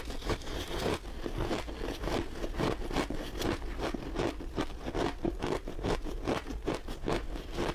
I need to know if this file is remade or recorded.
recorded